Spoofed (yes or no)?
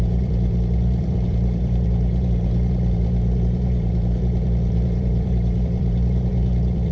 yes